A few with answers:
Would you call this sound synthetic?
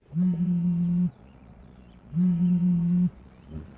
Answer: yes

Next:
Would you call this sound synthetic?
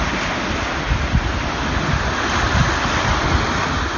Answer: no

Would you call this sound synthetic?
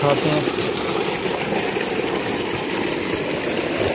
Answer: no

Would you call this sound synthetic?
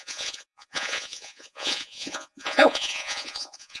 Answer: yes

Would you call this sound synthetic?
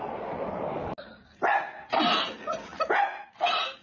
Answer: no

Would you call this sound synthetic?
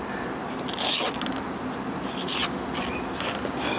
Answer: no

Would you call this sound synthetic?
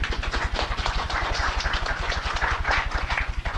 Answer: yes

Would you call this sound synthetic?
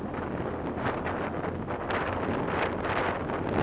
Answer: no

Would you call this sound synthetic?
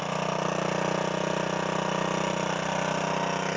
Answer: no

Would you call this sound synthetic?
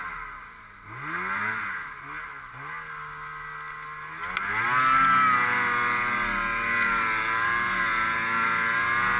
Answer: no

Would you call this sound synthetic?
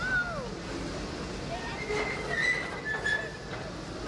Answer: no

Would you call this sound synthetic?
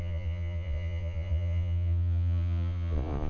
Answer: yes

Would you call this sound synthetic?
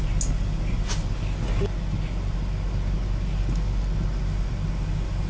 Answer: no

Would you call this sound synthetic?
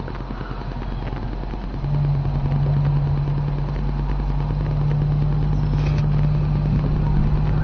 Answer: no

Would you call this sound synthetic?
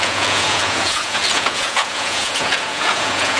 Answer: yes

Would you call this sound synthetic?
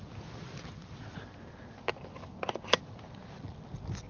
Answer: no